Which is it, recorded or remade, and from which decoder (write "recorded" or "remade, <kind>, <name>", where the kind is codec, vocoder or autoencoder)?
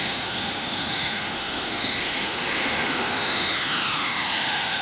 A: remade, autoencoder, DAC-VAE